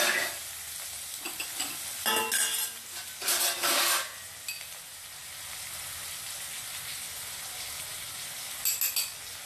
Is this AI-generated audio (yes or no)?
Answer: no